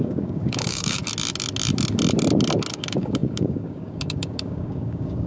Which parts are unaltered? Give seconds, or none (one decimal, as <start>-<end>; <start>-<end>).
1.0-2.7